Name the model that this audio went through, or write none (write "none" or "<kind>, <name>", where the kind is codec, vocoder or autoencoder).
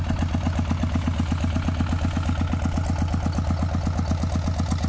none